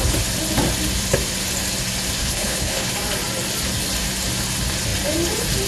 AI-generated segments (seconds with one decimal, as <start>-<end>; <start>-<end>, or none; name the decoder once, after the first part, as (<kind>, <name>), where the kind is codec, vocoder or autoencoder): 2.2-2.9 (codec, HILCodec)